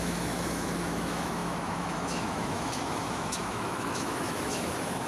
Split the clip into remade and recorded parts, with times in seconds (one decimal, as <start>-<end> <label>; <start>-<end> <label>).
0.0-5.1 remade